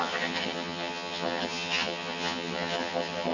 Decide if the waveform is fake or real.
fake